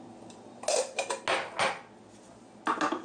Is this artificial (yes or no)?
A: no